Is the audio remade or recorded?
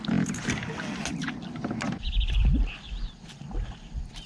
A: recorded